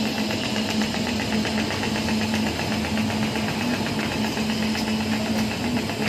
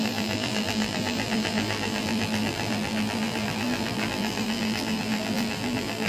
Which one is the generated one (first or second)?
second